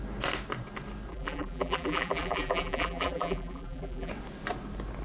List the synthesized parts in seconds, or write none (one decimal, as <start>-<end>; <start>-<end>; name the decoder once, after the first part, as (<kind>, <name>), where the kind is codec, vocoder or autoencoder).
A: 1.1-4.1 (vocoder, BigVGAN v2)

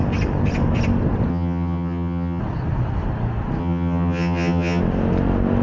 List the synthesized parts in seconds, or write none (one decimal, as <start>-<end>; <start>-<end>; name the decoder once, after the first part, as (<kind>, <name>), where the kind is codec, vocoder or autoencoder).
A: 1.3-2.4 (vocoder, HiFi-GAN); 3.6-4.8

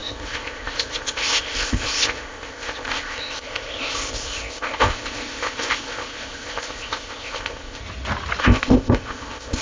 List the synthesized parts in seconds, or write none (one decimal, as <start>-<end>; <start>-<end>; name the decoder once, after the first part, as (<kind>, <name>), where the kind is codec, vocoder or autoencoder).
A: 0.0-7.8 (codec, ZipCodec); 8.4-9.6

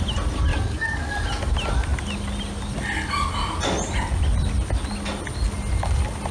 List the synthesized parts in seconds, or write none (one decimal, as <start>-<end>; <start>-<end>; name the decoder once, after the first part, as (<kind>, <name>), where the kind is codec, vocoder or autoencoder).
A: 0.5-1.1 (codec, DAC)

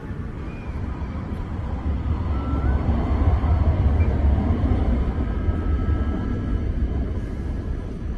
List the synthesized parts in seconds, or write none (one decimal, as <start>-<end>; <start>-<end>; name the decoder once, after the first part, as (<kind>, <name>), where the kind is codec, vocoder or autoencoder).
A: 0.0-1.3 (vocoder, BigVGAN v2)

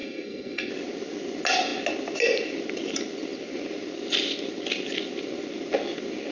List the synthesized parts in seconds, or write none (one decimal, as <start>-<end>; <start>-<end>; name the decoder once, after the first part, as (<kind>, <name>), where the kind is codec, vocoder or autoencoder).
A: 0.0-0.7 (codec, SNAC)

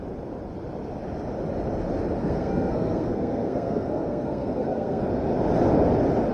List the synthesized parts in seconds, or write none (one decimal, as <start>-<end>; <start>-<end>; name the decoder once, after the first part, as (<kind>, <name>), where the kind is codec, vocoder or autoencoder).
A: 2.2-5.0 (codec, SNAC)

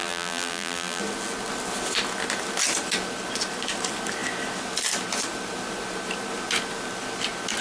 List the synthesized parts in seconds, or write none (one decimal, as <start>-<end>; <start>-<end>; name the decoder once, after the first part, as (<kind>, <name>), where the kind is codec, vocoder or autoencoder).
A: 0.0-1.0 (vocoder, BigVGAN v2)